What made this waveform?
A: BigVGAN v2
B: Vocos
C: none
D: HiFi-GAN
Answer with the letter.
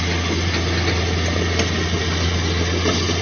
C